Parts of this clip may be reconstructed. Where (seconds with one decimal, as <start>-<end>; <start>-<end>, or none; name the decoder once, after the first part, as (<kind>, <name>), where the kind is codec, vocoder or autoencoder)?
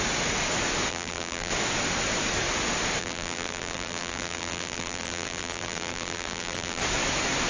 0.9-1.5 (vocoder, BigVGAN v2); 3.0-6.8